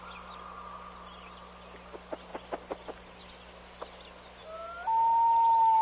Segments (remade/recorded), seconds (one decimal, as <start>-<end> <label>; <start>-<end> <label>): 0.0-5.8 recorded